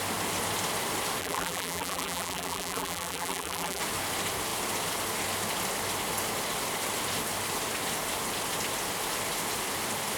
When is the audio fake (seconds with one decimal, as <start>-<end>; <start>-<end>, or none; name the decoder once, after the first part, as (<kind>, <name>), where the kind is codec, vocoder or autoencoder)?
1.2-3.8 (vocoder, BigVGAN v2)